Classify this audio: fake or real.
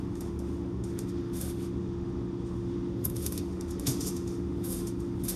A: fake